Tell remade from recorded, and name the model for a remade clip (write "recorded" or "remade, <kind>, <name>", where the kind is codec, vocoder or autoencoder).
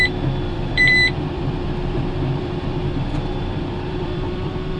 remade, vocoder, BigVGAN v2